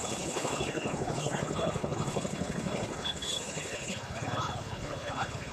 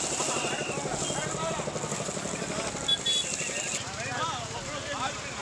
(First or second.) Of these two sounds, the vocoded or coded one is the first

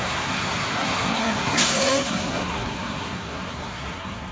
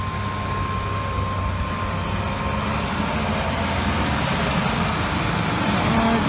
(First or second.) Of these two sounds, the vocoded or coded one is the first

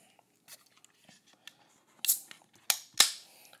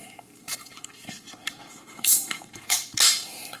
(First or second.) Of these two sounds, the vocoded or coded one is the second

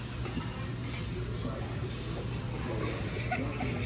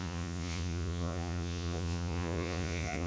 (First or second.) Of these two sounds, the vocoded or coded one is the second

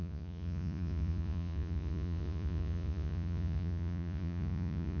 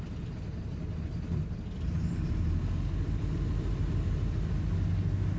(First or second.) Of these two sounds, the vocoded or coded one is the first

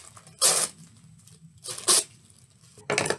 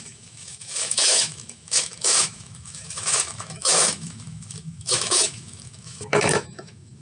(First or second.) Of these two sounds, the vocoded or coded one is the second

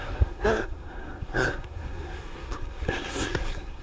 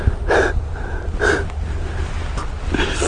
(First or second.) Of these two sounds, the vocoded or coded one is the first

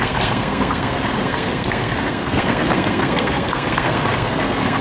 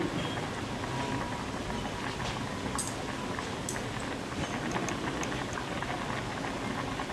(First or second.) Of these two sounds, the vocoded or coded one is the first